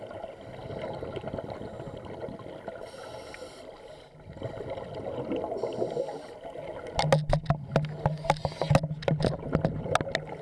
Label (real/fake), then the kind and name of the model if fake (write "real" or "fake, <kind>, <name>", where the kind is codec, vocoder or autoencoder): real